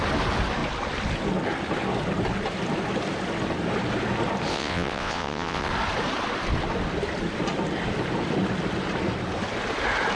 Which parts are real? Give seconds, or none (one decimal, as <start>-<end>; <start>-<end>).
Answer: 0.0-4.5; 5.7-10.2